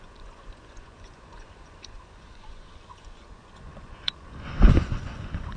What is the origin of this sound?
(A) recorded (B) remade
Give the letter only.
B